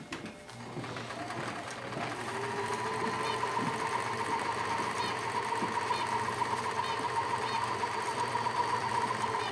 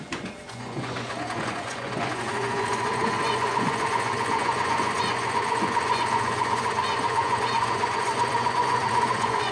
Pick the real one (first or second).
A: first